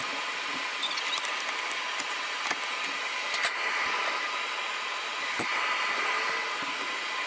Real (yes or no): yes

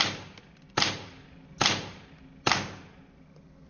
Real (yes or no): yes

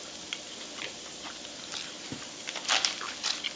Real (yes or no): yes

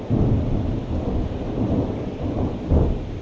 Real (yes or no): yes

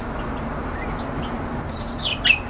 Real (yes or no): yes